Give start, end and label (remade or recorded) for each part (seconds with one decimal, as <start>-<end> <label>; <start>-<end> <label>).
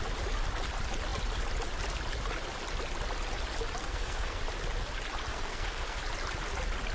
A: 0.0-3.8 recorded; 3.8-4.4 remade; 4.4-5.3 recorded; 5.3-6.0 remade; 6.0-6.9 recorded